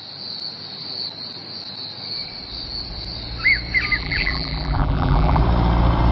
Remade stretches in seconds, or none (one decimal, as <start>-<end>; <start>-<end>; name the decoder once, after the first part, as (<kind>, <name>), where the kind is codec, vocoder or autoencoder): 4.0-5.4 (vocoder, BigVGAN v2)